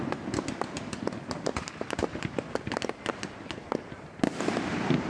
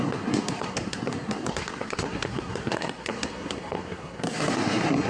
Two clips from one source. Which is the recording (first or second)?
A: first